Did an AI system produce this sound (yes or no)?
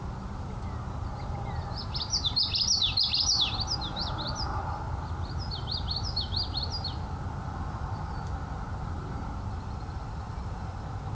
no